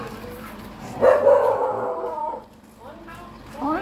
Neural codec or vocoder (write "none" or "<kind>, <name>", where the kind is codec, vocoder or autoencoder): none